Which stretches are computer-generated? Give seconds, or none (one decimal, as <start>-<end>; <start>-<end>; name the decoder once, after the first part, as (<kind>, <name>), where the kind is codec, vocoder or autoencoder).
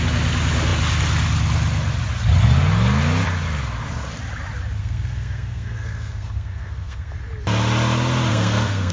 4.8-7.1 (codec, SNAC); 8.3-8.9